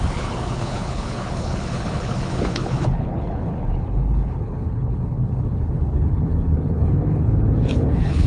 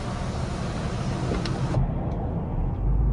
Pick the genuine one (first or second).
second